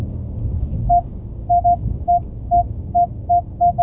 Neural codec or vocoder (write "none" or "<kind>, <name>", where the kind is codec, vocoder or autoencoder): codec, DAC